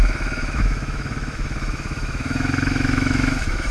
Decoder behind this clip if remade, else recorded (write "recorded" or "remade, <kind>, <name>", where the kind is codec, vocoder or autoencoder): remade, autoencoder, DAC-VAE